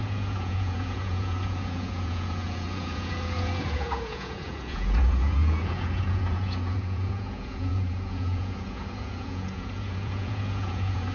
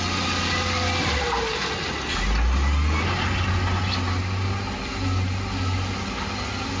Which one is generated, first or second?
first